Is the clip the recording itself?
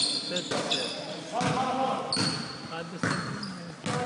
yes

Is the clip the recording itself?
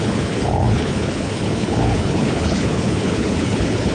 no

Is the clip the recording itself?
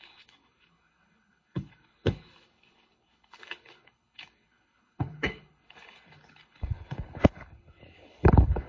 no